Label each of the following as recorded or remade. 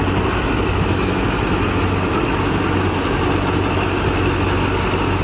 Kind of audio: recorded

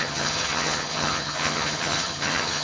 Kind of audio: remade